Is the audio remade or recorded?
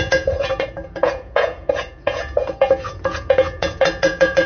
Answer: remade